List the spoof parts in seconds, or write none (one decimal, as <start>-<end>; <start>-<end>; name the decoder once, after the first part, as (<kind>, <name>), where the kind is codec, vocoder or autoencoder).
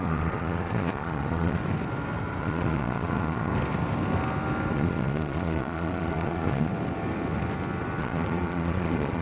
0.0-1.6 (vocoder, Vocos); 2.4-3.5; 4.7-6.7; 8.0-9.2